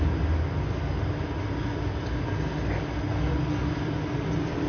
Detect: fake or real real